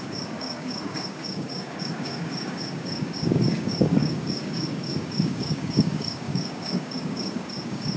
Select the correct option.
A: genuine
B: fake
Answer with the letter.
B